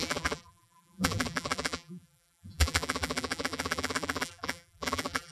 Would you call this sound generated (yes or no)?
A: yes